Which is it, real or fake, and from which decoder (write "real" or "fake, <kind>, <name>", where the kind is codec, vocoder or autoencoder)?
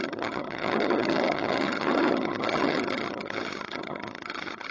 fake, vocoder, HiFi-GAN